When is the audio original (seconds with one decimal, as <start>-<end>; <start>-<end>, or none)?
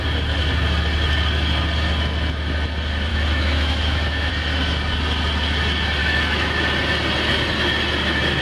0.0-3.1; 4.3-6.0; 6.6-8.4